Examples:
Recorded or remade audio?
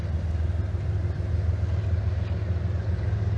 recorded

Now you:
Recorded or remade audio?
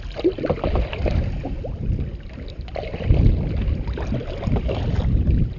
recorded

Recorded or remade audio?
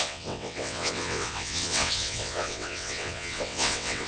remade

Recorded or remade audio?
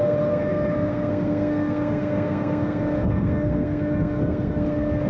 remade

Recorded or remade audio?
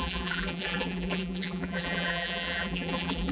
remade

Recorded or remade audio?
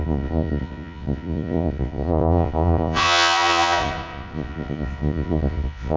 remade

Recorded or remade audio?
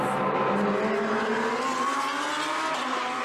recorded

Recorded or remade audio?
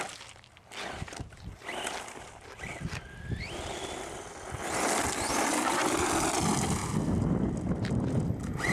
recorded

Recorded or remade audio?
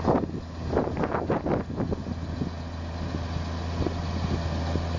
recorded